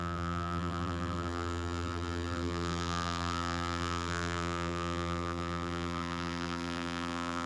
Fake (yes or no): yes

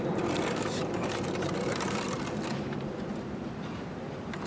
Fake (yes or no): yes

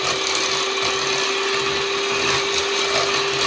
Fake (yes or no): no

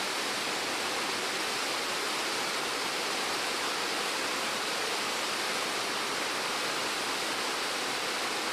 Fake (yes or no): no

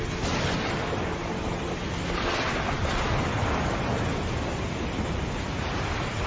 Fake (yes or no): no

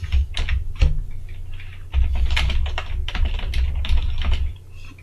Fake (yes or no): no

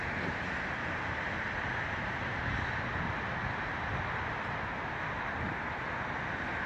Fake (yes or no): no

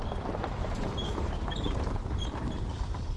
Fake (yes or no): yes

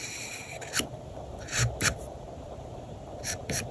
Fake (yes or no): yes